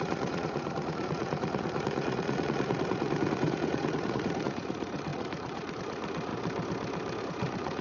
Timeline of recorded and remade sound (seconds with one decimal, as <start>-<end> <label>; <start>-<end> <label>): 0.0-6.3 remade; 6.3-7.2 recorded; 7.2-7.8 remade